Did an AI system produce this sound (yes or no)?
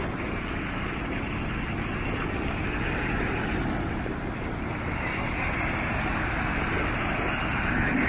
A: no